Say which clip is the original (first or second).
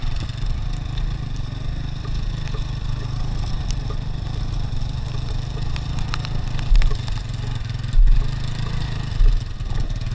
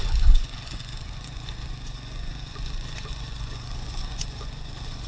first